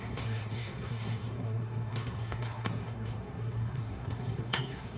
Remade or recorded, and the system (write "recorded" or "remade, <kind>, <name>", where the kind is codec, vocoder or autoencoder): remade, codec, SNAC